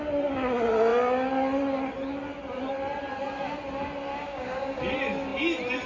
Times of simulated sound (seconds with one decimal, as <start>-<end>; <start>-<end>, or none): 4.1-4.8